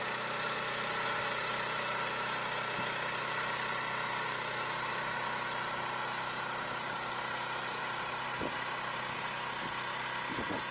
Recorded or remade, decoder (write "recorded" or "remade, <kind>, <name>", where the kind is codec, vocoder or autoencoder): recorded